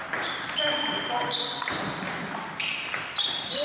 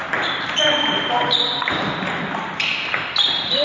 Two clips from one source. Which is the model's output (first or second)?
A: second